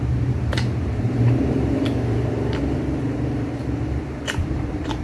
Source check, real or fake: fake